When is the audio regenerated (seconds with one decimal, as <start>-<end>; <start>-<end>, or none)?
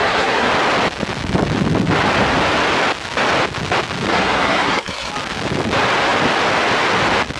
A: 0.0-0.5; 4.1-5.1